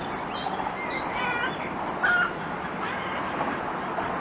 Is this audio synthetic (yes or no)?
no